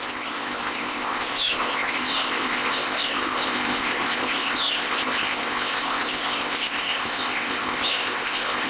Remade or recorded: remade